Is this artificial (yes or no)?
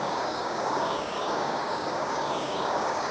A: yes